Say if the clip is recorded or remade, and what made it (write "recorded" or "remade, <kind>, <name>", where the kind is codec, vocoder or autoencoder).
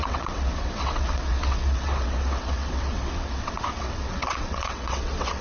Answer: remade, vocoder, WaveNeXt